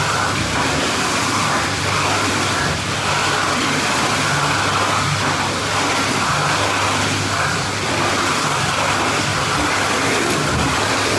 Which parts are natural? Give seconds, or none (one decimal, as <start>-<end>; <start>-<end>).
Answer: 3.2-7.5